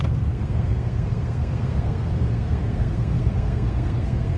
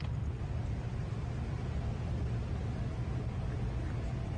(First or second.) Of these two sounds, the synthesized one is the first